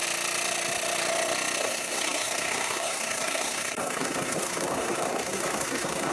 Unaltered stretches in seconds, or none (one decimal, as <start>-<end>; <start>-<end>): 0.0-1.6